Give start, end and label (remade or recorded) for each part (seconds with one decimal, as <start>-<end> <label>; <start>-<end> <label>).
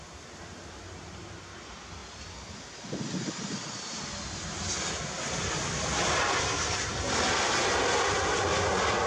0.0-9.1 recorded